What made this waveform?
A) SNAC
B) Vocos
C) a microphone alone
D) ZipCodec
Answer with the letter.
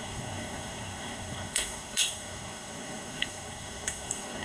A